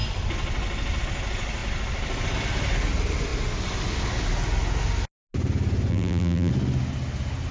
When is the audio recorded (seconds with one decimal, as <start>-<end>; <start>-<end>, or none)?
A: 0.0-5.9; 6.5-7.5